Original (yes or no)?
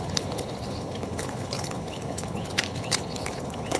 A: no